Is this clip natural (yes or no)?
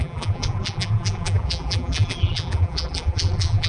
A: no